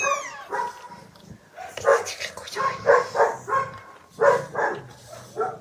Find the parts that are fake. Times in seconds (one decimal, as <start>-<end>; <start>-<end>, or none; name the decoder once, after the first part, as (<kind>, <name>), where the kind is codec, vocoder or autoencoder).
none